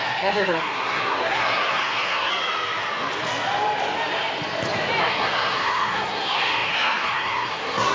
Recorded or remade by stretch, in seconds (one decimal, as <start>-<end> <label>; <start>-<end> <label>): 0.0-2.3 remade; 2.3-5.0 recorded; 5.0-7.9 remade